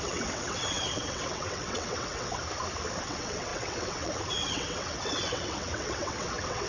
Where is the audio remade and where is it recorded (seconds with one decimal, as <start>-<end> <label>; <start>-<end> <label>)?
0.0-2.4 remade; 2.4-3.0 recorded; 3.0-6.7 remade

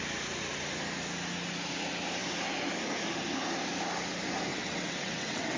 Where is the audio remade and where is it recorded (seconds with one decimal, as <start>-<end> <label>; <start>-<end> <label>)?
0.0-4.5 recorded; 4.5-5.6 remade

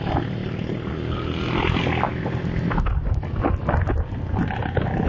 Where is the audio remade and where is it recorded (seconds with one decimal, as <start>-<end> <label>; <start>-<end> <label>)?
0.0-5.1 recorded